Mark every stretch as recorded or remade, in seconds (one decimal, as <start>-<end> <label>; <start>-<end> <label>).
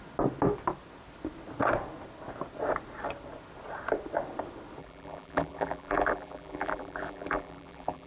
0.0-4.8 recorded; 4.8-8.1 remade